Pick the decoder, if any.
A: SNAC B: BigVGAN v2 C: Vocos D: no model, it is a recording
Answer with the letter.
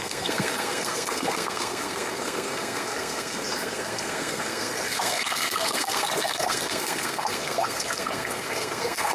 A